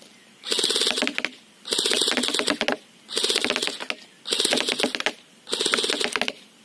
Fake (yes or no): no